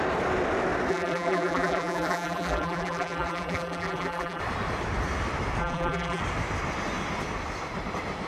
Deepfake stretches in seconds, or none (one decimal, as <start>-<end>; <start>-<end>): 0.9-4.4; 5.6-6.2